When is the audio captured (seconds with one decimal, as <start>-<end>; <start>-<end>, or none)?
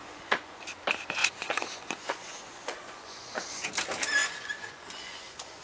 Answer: 0.6-1.2; 3.7-4.2